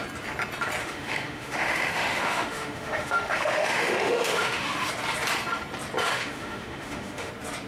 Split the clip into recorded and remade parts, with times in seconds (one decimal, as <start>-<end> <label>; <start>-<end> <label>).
0.0-0.8 recorded; 0.8-4.9 remade; 4.9-6.0 recorded; 6.0-7.3 remade; 7.3-7.7 recorded